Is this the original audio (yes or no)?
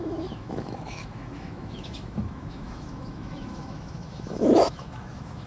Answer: no